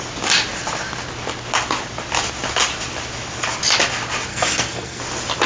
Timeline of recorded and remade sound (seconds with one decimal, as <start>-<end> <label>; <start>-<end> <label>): 0.0-4.3 recorded; 4.3-5.0 remade; 5.0-5.5 recorded